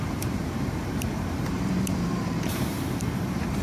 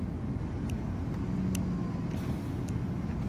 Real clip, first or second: second